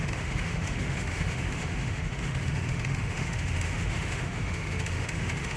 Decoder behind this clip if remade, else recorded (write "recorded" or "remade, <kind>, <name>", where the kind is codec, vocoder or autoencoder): remade, autoencoder, DAC-VAE